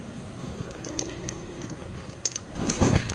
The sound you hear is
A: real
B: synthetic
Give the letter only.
B